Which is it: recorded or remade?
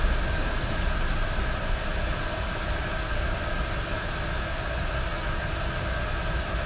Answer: recorded